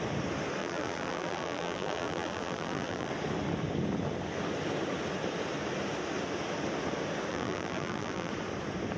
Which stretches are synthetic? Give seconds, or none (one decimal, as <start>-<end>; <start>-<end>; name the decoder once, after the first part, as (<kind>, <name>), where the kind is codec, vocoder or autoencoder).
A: 0.6-3.1 (vocoder, BigVGAN v2); 7.3-8.3